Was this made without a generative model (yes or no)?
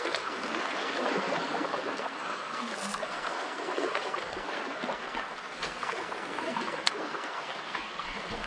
no